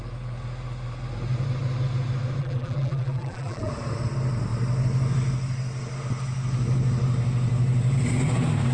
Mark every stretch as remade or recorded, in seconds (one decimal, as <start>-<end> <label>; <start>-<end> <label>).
0.0-2.4 recorded; 2.4-3.7 remade; 3.7-8.7 recorded